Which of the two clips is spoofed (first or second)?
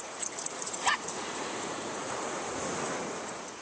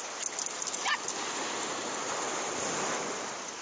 first